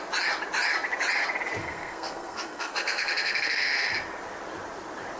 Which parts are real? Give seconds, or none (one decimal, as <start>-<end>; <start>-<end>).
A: 0.0-1.6; 3.9-5.2